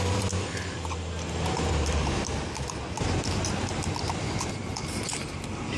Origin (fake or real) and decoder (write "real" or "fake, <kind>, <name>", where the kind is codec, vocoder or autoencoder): fake, vocoder, BigVGAN v2